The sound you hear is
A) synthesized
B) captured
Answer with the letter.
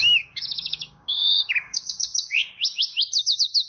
A